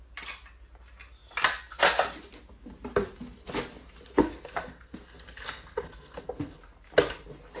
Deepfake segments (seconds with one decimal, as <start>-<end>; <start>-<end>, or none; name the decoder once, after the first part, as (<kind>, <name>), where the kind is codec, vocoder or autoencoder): 4.2-6.5 (codec, SNAC)